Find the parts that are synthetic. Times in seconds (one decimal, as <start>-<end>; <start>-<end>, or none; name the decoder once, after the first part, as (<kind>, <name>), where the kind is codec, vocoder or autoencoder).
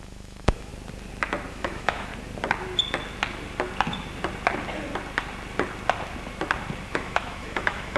0.0-0.7 (autoencoder, DAC-VAE); 1.5-2.1; 6.9-8.0